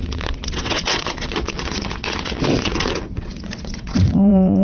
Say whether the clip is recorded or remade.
remade